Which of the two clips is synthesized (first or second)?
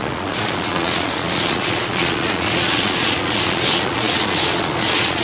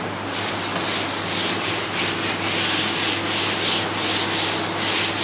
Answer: first